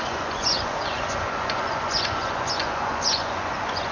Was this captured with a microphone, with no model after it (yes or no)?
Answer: no